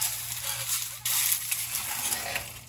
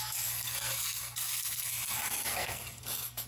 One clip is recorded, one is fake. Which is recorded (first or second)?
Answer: first